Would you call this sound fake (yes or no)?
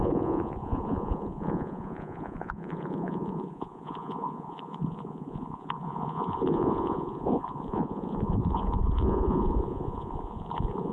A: yes